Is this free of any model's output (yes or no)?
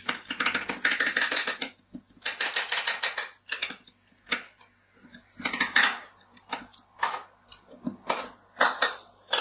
yes